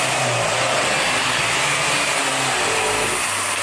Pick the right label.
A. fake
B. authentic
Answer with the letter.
B